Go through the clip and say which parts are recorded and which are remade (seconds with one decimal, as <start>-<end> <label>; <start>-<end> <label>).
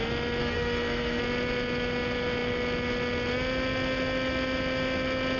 0.0-0.4 recorded; 0.4-1.2 remade; 1.2-5.4 recorded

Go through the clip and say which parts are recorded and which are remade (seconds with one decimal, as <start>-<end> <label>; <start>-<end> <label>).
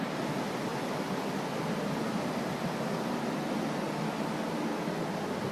0.0-5.5 recorded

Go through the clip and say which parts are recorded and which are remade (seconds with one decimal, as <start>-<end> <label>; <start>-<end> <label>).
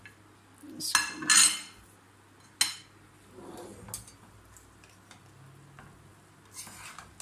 0.0-7.2 recorded